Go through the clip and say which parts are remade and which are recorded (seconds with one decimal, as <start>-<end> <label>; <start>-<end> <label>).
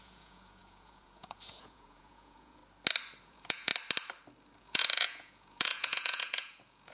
0.0-2.6 remade; 2.6-3.2 recorded; 3.2-3.7 remade; 3.7-4.6 recorded; 4.6-6.9 remade